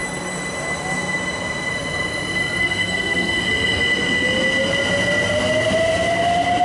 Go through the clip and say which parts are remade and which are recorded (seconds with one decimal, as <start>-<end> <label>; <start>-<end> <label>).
0.0-2.6 recorded; 2.6-3.4 remade; 3.4-6.6 recorded